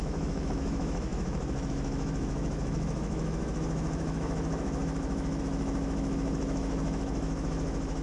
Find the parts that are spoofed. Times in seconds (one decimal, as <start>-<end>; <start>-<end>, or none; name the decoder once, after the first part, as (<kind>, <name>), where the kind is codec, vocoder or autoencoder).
0.0-8.0 (autoencoder, DAC-VAE)